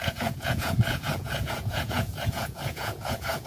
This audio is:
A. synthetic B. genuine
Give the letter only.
A